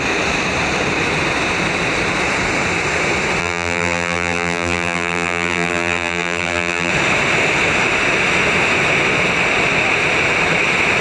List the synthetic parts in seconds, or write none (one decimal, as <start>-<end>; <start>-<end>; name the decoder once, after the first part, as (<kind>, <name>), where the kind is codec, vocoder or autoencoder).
3.4-6.9 (vocoder, BigVGAN v2)